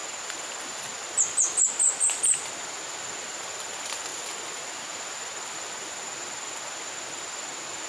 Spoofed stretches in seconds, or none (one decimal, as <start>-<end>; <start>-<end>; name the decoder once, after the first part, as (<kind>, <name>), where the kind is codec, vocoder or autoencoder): none